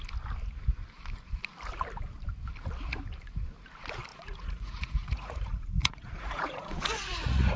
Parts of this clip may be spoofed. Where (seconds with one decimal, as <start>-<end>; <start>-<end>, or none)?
4.1-7.6